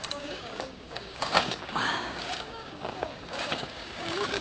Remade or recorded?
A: remade